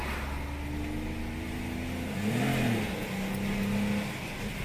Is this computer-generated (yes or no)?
no